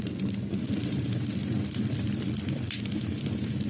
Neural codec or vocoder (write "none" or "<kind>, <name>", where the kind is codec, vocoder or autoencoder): none